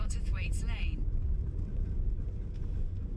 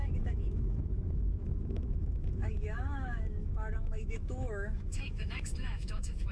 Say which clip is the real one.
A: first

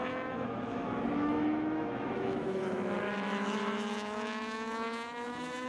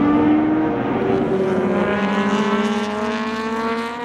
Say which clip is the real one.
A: second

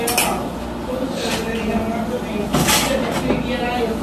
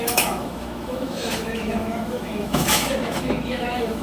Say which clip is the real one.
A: first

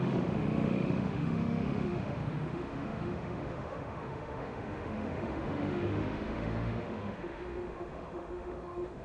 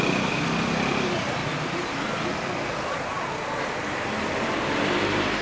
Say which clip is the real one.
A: second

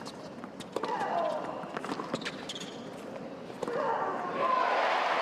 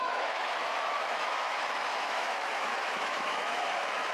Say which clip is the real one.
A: first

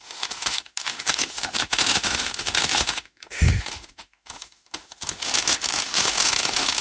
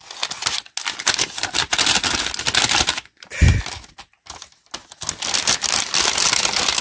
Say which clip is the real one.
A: second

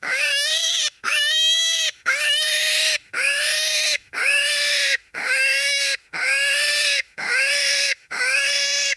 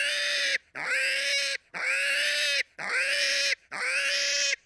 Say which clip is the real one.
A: second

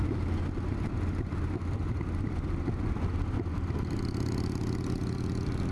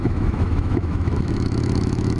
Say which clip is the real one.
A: first